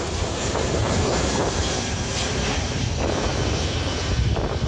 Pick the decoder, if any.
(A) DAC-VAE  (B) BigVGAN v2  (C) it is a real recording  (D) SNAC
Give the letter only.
C